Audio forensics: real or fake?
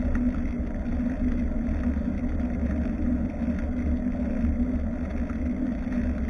real